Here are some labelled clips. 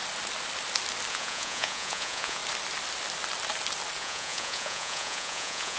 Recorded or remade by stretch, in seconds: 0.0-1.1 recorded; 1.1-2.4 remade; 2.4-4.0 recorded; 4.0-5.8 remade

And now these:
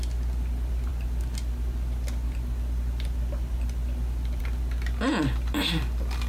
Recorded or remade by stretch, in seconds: 0.0-6.3 recorded

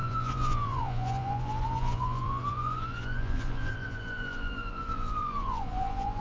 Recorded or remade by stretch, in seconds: 0.0-6.2 remade

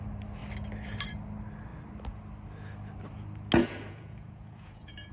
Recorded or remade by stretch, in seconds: 0.0-3.6 recorded; 3.6-5.1 remade

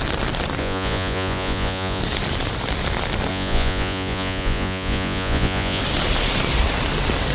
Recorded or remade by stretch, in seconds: 0.0-0.6 recorded; 0.6-2.0 remade; 2.0-3.3 recorded; 3.3-5.8 remade; 5.8-7.3 recorded

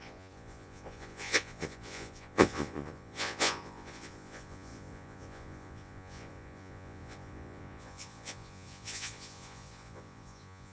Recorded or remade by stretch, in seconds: 0.0-10.7 remade

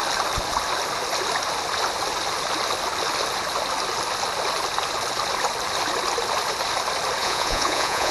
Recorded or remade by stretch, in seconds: 0.0-7.2 recorded; 7.2-8.1 remade